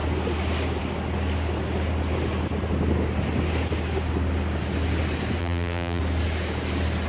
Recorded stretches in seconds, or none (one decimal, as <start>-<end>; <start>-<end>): 0.0-5.4; 6.0-7.1